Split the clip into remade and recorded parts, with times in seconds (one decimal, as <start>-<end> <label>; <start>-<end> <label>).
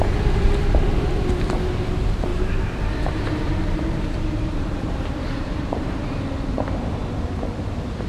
0.0-2.3 recorded; 2.3-6.2 remade; 6.2-8.1 recorded